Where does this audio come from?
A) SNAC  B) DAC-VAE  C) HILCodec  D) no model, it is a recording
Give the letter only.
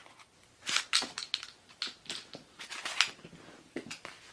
D